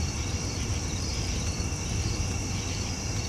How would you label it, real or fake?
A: fake